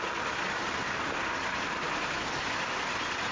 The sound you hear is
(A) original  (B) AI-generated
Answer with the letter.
A